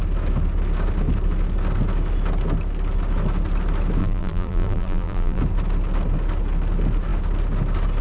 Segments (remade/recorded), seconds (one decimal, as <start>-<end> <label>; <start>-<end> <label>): 0.0-4.0 recorded; 4.0-5.4 remade; 5.4-8.0 recorded